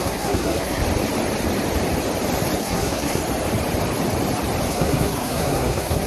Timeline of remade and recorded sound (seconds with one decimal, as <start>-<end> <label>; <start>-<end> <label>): 0.0-0.8 remade; 0.8-2.6 recorded; 2.6-3.2 remade; 3.2-4.7 recorded; 4.7-6.1 remade